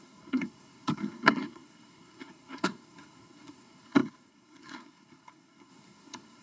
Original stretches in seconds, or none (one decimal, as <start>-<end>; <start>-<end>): none